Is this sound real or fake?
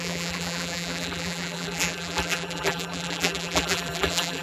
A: fake